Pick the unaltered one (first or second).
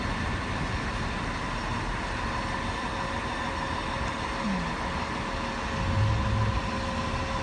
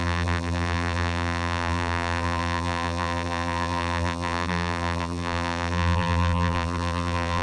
first